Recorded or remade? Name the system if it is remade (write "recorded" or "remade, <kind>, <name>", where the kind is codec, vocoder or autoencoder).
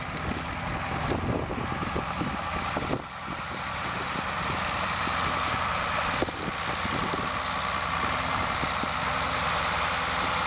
recorded